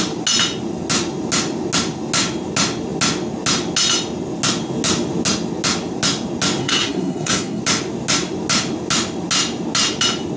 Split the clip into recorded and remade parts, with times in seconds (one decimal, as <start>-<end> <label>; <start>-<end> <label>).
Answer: 0.0-6.6 recorded; 6.6-7.6 remade; 7.6-10.4 recorded